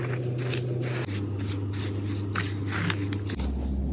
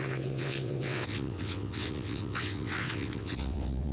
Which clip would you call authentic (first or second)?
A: first